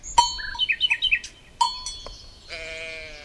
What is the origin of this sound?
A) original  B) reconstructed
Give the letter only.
A